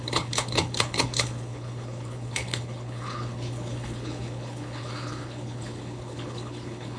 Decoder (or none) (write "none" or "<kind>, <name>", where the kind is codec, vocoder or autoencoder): codec, HILCodec